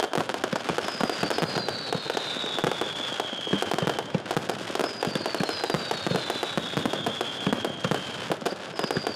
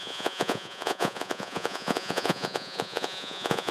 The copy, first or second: second